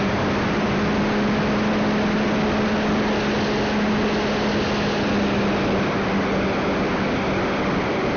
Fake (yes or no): no